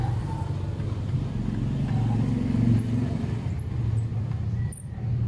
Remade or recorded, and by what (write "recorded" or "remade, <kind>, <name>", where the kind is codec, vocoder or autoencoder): recorded